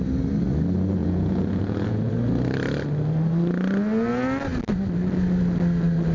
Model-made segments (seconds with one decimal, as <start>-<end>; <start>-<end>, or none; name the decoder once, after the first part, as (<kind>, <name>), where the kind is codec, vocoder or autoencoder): 1.0-2.1 (vocoder, Vocos)